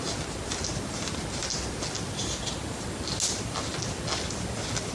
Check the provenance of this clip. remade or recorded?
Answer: recorded